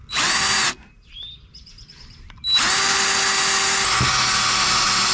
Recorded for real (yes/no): yes